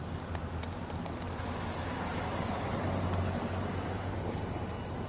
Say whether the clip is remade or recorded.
recorded